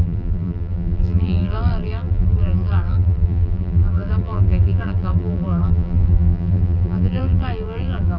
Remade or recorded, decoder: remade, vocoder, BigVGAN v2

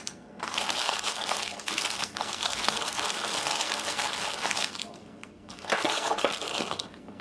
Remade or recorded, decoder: remade, codec, SNAC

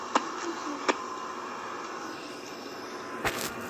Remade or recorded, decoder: recorded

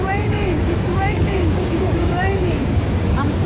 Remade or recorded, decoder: remade, codec, DAC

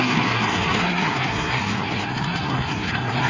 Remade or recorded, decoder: remade, codec, SNAC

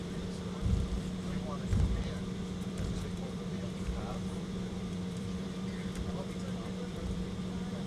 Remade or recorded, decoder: remade, vocoder, BigVGAN v2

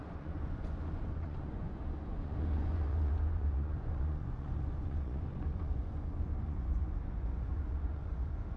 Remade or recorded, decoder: remade, vocoder, Vocos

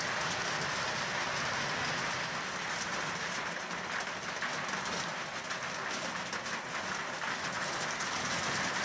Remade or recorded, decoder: recorded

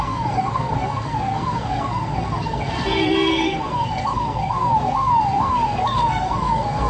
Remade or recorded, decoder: remade, codec, SNAC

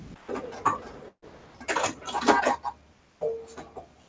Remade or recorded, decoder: recorded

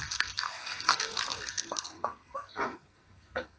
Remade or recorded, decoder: remade, codec, SNAC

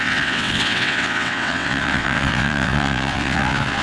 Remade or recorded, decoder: remade, vocoder, WaveNeXt